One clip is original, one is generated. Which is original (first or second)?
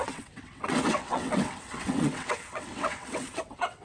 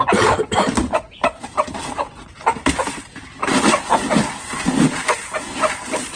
second